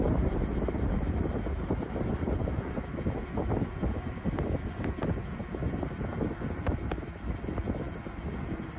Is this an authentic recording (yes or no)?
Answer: yes